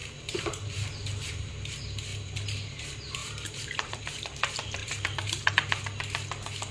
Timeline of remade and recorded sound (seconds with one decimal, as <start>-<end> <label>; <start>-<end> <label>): 0.0-1.5 remade; 1.5-2.1 recorded; 2.1-2.8 remade; 2.8-3.2 recorded; 3.2-4.0 remade; 4.0-4.8 recorded; 4.8-5.5 remade; 5.5-6.7 recorded